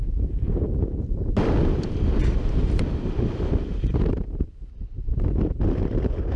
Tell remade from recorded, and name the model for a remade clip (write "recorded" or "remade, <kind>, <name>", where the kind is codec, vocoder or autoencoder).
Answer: remade, vocoder, BigVGAN v2